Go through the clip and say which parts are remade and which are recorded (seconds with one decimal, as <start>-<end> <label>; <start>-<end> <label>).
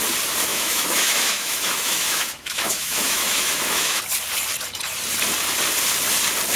0.0-0.5 recorded; 0.5-4.0 remade; 4.0-6.6 recorded